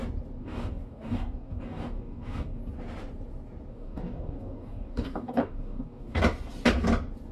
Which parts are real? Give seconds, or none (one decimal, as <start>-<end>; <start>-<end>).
0.0-0.4; 2.6-3.7; 6.2-7.3